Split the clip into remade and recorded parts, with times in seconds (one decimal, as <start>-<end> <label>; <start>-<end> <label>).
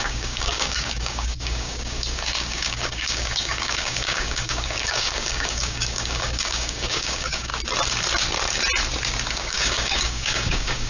0.0-7.5 remade; 7.5-9.3 recorded; 9.3-10.9 remade